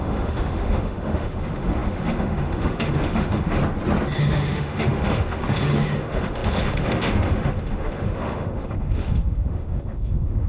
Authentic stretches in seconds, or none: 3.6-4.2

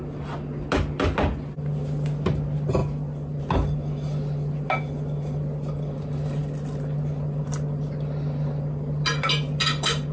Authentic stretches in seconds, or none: 0.0-10.1

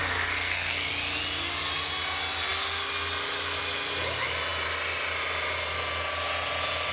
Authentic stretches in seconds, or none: 0.9-6.9

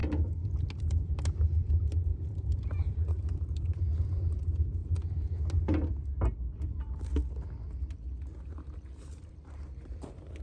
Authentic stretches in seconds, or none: 0.0-0.8; 4.8-8.4

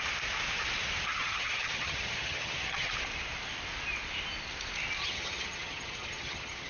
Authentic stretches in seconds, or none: 0.0-1.1; 2.9-5.0